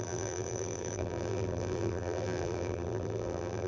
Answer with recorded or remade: remade